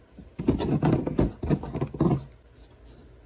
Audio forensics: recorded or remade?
recorded